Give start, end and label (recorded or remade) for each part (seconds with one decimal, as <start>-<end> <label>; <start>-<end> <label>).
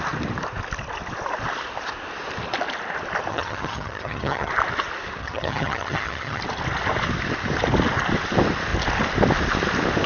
0.0-3.3 recorded; 3.3-4.5 remade; 4.5-5.2 recorded; 5.2-6.4 remade; 6.4-10.1 recorded